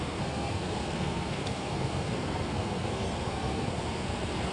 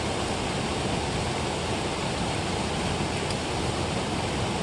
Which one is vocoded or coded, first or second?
first